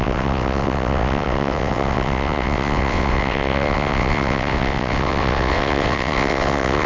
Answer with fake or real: fake